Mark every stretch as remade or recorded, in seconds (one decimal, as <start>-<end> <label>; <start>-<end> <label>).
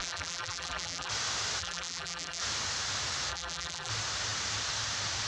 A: 0.0-1.1 remade; 1.1-1.6 recorded; 1.6-2.4 remade; 2.4-3.3 recorded; 3.3-3.9 remade; 3.9-5.3 recorded